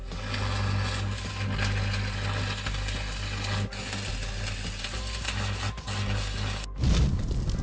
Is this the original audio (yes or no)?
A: yes